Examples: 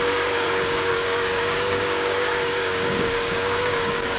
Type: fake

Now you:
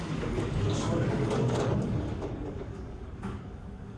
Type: fake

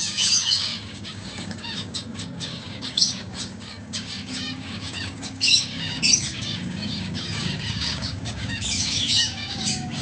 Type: fake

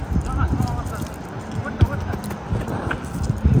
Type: real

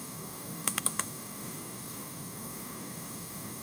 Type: fake